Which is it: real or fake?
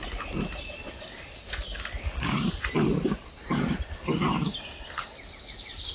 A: real